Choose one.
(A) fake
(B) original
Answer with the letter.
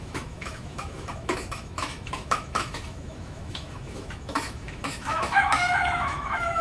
A